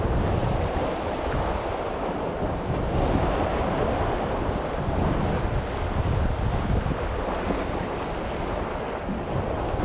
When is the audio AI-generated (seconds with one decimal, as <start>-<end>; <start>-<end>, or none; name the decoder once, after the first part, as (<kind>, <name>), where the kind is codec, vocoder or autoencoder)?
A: none